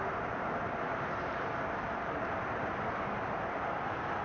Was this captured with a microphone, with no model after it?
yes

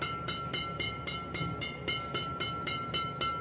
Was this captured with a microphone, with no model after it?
yes